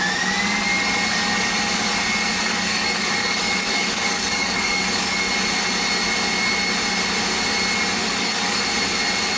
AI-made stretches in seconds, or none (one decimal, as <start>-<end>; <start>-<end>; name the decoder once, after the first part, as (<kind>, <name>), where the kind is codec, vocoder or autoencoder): 2.5-5.3 (codec, DAC); 8.0-8.6